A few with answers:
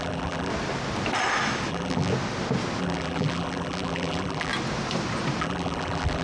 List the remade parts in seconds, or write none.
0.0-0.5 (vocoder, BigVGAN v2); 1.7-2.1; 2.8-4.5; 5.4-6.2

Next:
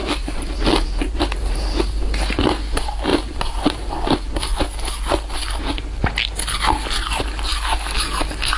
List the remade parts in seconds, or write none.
0.0-1.9 (vocoder, BigVGAN v2); 3.1-4.3

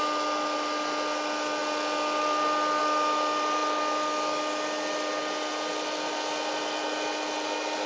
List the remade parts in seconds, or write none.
none

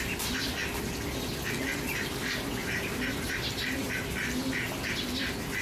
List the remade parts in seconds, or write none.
2.6-3.9 (vocoder, BigVGAN v2)